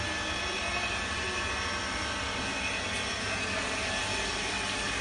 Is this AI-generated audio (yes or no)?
no